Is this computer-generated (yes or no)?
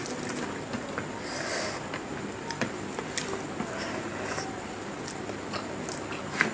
no